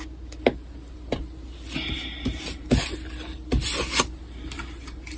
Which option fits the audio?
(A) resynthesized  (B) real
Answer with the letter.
B